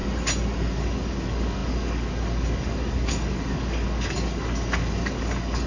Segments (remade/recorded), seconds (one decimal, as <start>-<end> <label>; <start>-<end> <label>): 0.0-0.7 recorded; 0.7-5.7 remade